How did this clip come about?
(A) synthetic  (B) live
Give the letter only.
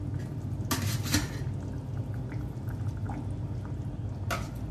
B